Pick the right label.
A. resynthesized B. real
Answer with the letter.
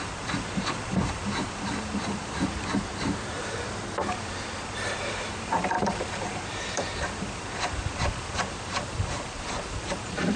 A